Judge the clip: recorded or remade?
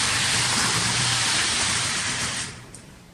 remade